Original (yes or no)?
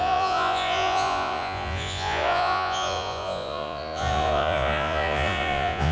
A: no